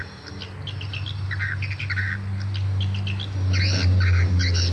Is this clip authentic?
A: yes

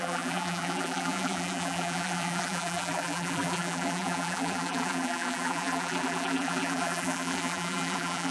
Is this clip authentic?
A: no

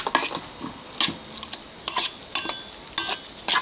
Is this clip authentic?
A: yes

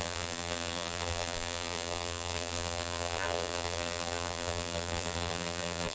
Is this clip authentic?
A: no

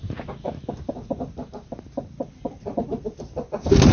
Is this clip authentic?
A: yes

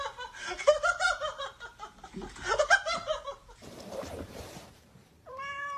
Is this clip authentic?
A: no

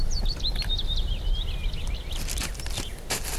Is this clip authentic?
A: no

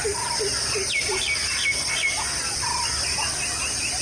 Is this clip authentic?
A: yes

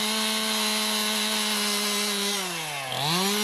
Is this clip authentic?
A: yes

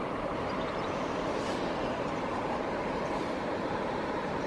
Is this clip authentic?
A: no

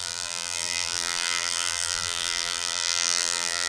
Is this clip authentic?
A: no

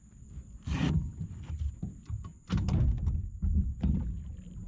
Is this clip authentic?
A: no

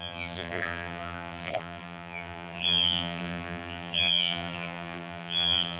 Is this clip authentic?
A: no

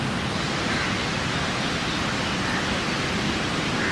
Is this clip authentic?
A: yes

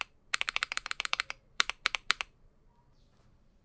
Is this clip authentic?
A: no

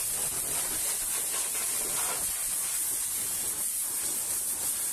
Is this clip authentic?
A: yes